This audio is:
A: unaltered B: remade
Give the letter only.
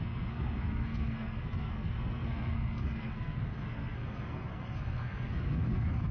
B